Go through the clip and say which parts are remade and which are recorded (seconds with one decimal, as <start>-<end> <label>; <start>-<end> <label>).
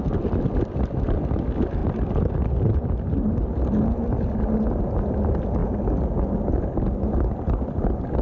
0.0-8.2 recorded